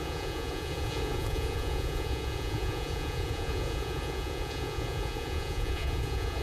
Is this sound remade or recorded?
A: remade